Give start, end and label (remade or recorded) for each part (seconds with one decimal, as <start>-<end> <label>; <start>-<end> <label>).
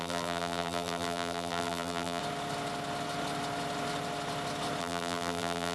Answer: 0.0-2.2 remade; 2.2-4.8 recorded; 4.8-5.7 remade